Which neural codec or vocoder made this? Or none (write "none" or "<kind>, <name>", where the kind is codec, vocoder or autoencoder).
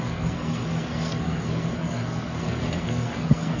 codec, SNAC